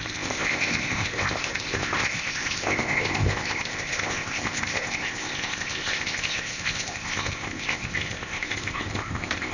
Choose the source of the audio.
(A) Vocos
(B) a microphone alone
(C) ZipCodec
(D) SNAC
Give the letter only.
C